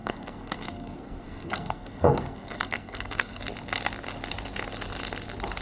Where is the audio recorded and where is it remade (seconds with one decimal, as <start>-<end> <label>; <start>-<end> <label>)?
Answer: 0.0-3.4 remade; 3.4-5.6 recorded